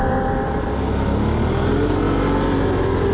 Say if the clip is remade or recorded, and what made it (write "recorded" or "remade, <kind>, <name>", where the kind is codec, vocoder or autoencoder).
recorded